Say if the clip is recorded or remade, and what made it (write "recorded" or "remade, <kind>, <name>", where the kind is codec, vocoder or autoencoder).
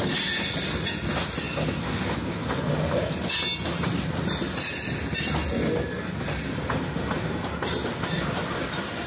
recorded